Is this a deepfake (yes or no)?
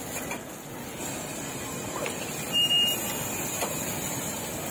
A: no